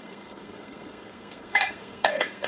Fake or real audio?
fake